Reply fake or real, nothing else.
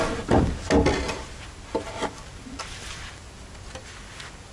real